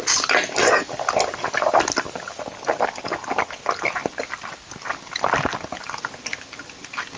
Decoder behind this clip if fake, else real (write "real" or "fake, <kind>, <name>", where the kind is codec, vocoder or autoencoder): real